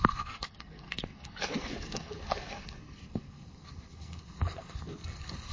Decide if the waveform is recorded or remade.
remade